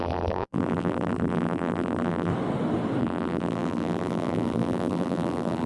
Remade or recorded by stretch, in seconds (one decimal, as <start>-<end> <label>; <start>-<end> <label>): 0.0-2.3 remade; 2.3-3.0 recorded; 3.0-5.7 remade